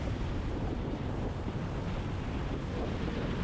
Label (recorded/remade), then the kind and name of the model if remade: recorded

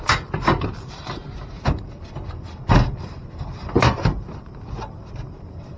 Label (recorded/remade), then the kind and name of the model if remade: remade, vocoder, BigVGAN v2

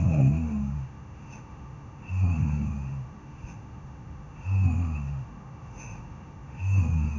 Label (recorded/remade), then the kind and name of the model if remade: remade, autoencoder, DAC-VAE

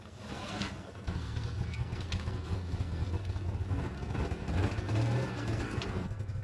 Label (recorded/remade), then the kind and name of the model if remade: remade, codec, SNAC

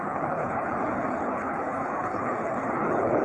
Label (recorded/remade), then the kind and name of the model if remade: remade, codec, HILCodec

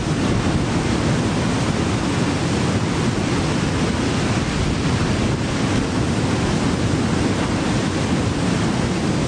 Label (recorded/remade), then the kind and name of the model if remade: recorded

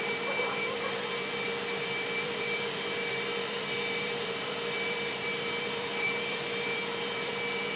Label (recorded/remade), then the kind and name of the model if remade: remade, vocoder, BigVGAN v2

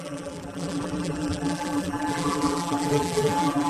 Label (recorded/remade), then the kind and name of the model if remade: remade, vocoder, BigVGAN v2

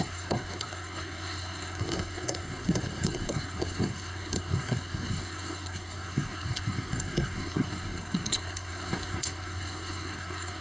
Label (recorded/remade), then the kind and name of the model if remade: remade, codec, SNAC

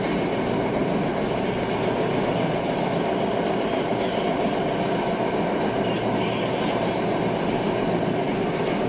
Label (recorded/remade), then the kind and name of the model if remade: recorded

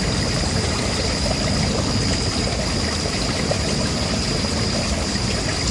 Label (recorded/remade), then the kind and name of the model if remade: recorded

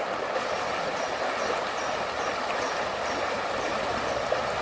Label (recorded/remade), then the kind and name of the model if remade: recorded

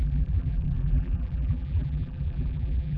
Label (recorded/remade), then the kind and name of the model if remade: remade, vocoder, BigVGAN v2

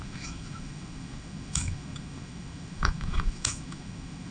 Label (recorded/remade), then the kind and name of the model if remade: remade, autoencoder, DAC-VAE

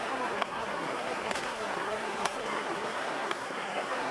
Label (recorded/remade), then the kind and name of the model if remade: remade, codec, SNAC